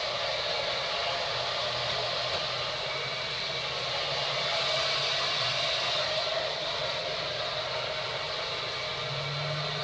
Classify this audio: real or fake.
real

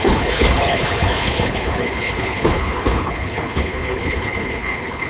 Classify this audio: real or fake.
fake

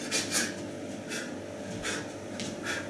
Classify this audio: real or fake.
real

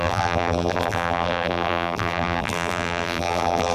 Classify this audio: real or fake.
fake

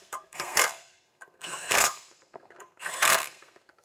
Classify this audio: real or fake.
fake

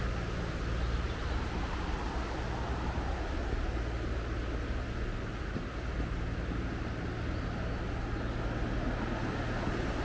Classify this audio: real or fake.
real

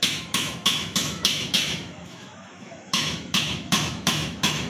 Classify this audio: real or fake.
fake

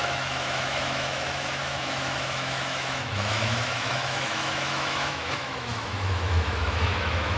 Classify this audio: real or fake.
fake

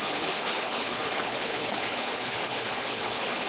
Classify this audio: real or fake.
fake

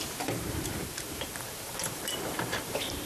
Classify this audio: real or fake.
fake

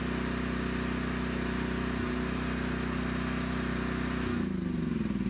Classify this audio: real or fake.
real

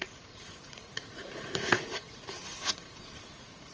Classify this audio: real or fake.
fake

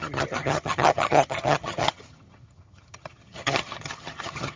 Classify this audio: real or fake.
fake